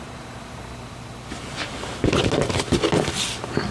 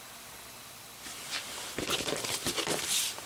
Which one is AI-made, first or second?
second